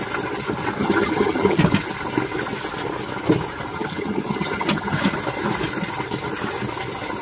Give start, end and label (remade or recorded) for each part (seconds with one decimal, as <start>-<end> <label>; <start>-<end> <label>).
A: 0.0-0.8 recorded; 0.8-1.6 remade; 1.6-3.7 recorded; 3.7-5.0 remade; 5.0-7.2 recorded